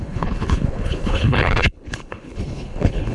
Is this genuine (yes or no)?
no